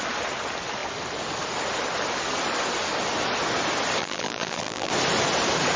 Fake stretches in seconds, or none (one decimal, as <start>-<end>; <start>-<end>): 4.0-4.9